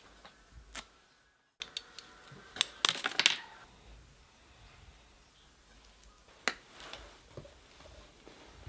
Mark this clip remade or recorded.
recorded